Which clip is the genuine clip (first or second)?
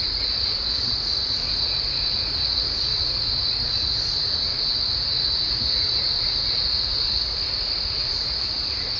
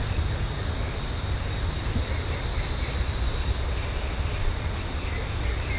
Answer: second